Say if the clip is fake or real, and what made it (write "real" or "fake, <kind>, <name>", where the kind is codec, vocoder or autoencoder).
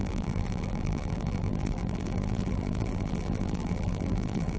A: fake, vocoder, BigVGAN v2